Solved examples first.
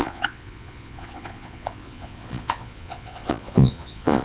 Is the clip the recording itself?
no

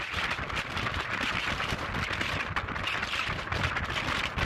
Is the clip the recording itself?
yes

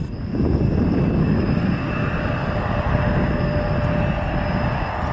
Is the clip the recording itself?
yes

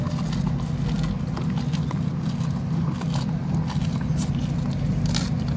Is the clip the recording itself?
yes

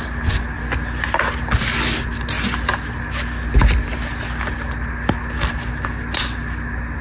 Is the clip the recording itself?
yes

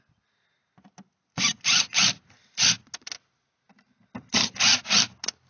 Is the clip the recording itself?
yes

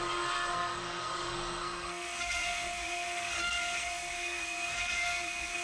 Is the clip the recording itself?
no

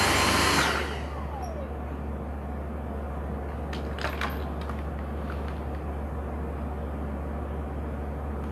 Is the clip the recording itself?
yes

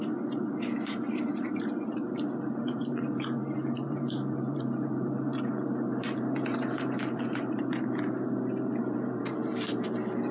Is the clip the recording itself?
no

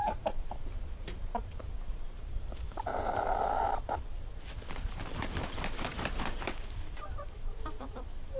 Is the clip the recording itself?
no